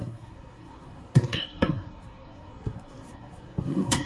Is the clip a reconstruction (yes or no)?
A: yes